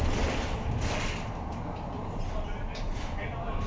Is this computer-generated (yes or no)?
no